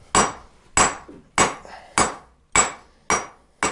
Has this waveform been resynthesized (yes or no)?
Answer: no